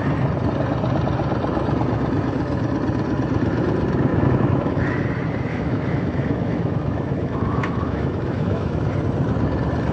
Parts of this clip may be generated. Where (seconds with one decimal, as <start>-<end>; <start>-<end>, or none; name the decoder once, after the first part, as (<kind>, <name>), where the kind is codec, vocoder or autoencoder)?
4.1-4.8 (autoencoder, DAC-VAE); 5.5-8.9